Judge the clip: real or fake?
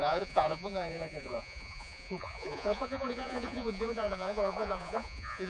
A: fake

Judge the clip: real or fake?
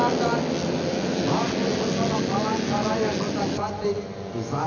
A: real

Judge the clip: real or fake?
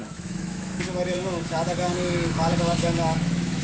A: fake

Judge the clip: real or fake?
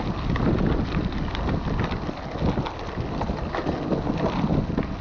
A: real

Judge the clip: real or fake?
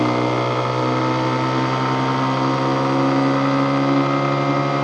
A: real